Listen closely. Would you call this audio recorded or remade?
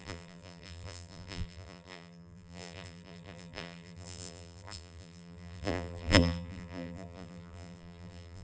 remade